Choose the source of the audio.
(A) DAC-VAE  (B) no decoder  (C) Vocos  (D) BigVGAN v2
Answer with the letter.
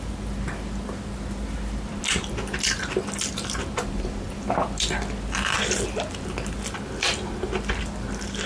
B